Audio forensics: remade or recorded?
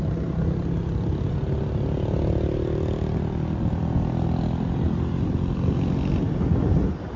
recorded